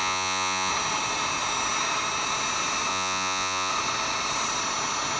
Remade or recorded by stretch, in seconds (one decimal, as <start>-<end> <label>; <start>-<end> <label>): 0.0-0.7 remade; 0.7-2.9 recorded; 2.9-3.7 remade; 3.7-5.2 recorded